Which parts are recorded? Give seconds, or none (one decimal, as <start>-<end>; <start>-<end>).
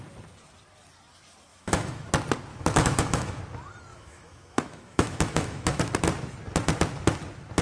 0.0-1.5; 2.1-2.5; 3.4-3.9; 5.8-7.6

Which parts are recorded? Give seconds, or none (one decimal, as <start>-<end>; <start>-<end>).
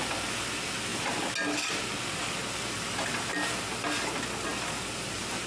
0.0-5.5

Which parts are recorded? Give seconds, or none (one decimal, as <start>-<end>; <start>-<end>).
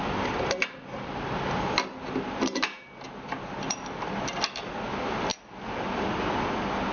0.0-6.9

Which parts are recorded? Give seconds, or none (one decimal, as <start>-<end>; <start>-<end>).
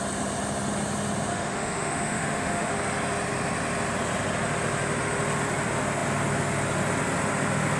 0.0-1.3; 2.7-7.8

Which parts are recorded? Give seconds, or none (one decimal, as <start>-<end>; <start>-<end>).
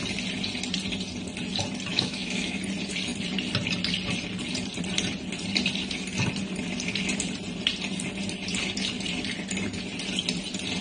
0.0-1.9; 2.6-10.8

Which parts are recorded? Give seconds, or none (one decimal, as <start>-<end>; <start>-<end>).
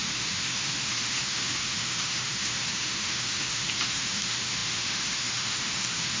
none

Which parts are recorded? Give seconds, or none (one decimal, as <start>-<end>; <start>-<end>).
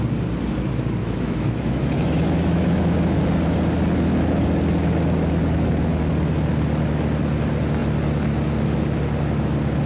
0.0-1.0; 3.2-9.9